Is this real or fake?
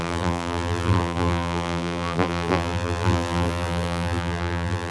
fake